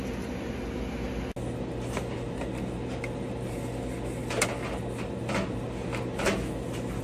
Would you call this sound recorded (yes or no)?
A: yes